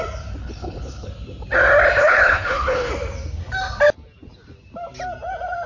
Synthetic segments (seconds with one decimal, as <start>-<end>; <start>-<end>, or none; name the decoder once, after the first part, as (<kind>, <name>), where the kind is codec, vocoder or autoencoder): 0.4-1.1 (codec, HILCodec); 2.0-2.9